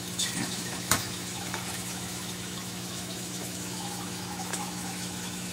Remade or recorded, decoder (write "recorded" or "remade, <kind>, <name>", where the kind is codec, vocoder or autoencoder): remade, autoencoder, DAC-VAE